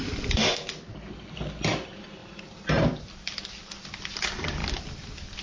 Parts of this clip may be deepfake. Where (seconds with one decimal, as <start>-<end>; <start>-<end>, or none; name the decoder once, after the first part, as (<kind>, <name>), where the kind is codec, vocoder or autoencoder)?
none